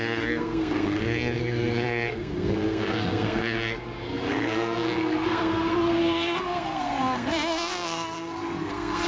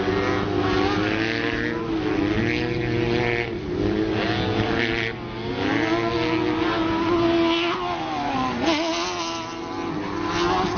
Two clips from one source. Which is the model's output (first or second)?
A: first